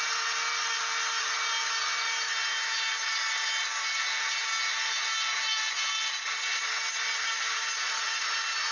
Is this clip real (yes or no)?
yes